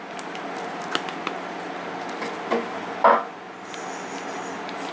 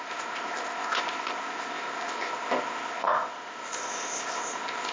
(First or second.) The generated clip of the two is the second